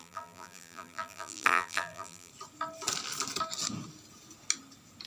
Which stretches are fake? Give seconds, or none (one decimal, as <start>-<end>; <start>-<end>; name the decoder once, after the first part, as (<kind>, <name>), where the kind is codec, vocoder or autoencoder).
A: 0.0-2.3 (vocoder, BigVGAN v2)